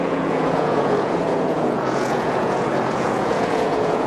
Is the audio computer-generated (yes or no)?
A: yes